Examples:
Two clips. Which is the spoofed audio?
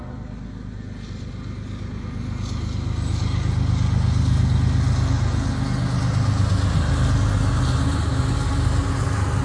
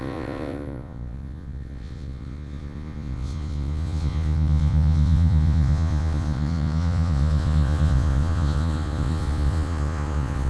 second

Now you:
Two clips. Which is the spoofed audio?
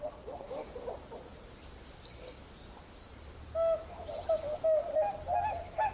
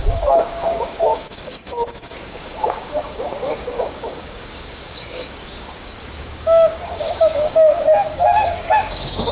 second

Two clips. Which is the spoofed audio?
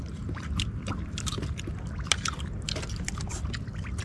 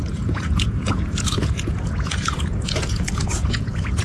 second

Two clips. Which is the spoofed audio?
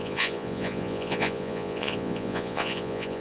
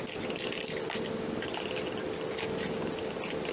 first